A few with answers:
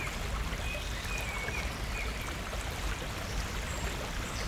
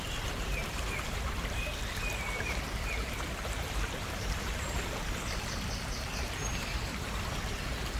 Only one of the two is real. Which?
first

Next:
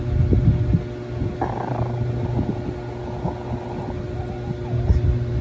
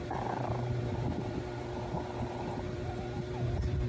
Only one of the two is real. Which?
first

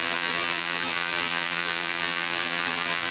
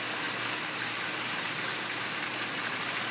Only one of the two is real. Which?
second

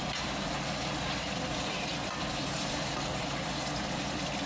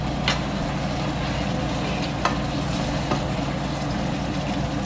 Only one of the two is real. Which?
second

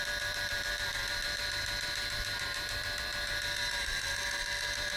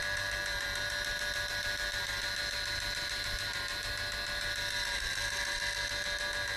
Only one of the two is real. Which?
second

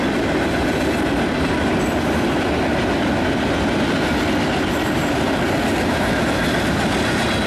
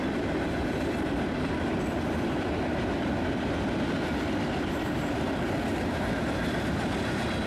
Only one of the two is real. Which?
first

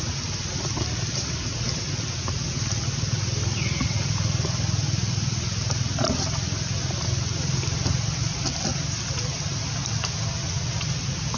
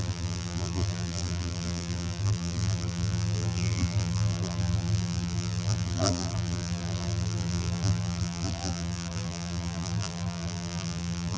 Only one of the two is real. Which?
first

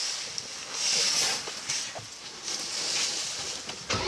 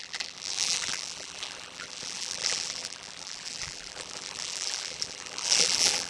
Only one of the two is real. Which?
first